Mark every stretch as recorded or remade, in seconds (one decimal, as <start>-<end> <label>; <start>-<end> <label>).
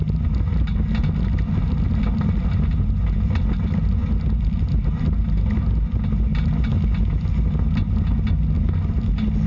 0.0-9.5 recorded